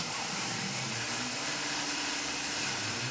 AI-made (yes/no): yes